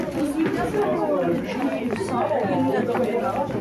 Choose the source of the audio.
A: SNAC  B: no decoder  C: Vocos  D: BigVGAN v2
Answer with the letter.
D